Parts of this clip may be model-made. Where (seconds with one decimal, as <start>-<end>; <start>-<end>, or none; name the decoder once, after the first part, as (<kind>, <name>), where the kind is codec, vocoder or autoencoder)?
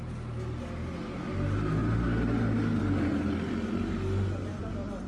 none